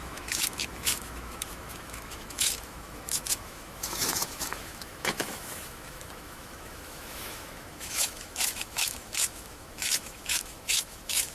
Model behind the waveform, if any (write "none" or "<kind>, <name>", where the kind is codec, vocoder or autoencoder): autoencoder, DAC-VAE